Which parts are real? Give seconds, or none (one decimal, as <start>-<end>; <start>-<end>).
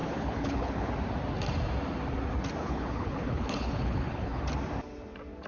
0.9-2.6; 4.4-5.5